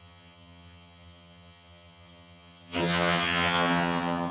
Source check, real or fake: fake